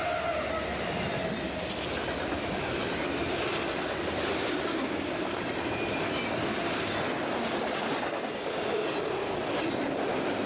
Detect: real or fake real